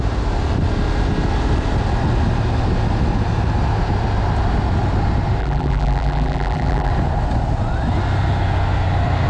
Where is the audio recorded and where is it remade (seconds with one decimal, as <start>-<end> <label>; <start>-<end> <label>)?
0.0-5.4 recorded; 5.4-6.9 remade; 6.9-9.3 recorded